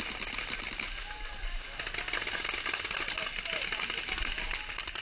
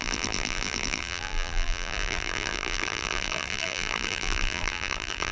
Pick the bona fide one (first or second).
first